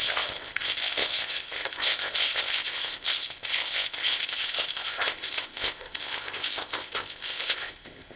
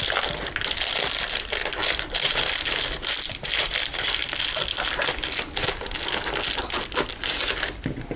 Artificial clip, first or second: first